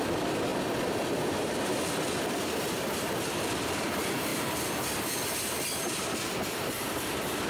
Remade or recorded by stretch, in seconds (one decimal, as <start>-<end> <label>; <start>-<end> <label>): 0.0-7.5 remade